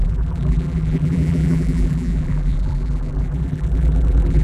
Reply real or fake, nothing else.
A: fake